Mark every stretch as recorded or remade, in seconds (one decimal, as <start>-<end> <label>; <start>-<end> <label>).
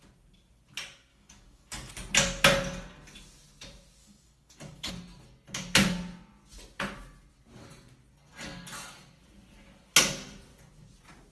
0.0-1.1 recorded; 1.1-1.9 remade; 1.9-4.0 recorded; 4.0-4.9 remade; 4.9-11.3 recorded